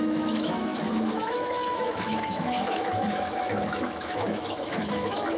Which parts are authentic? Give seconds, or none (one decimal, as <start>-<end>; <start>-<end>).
none